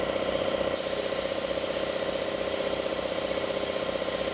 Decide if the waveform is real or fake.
real